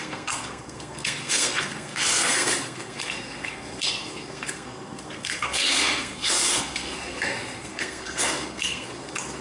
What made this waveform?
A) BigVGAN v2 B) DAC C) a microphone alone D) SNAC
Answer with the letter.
D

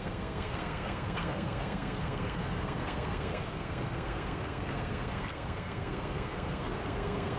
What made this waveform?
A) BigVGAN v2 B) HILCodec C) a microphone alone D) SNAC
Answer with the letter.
D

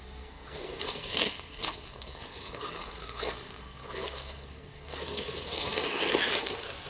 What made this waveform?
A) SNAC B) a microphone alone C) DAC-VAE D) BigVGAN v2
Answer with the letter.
A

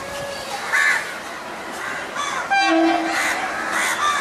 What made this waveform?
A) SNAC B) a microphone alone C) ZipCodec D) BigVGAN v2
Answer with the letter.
B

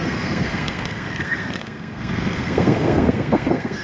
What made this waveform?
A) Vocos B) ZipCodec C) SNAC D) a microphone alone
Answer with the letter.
C